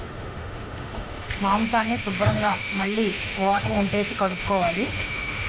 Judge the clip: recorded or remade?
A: remade